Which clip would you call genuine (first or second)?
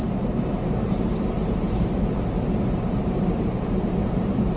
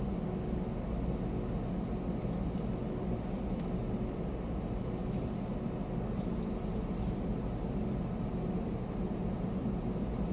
second